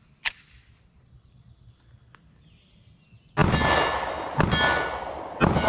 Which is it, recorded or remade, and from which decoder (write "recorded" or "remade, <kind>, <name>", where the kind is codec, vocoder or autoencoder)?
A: recorded